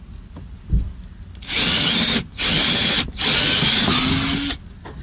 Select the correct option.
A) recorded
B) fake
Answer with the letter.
A